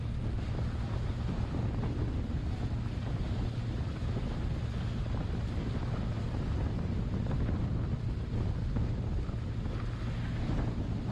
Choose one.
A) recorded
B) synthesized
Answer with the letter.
A